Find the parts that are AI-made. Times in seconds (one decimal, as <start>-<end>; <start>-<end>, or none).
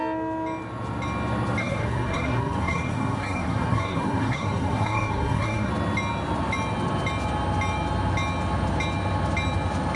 1.6-5.7